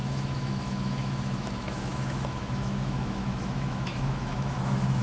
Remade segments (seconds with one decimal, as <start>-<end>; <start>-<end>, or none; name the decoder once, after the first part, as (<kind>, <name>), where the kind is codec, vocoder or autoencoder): 0.0-5.0 (autoencoder, DAC-VAE)